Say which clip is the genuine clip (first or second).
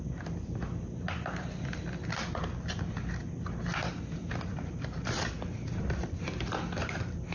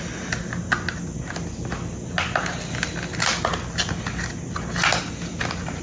second